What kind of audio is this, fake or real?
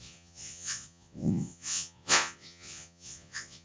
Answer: fake